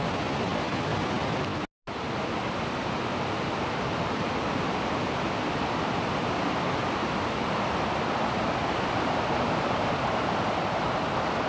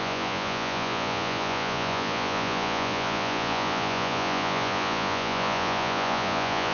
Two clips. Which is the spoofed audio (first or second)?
second